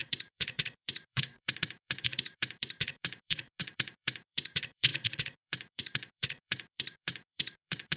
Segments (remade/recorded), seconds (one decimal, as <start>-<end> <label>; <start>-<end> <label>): 0.0-8.0 remade